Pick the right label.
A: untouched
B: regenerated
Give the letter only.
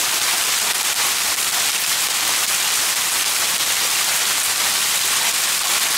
A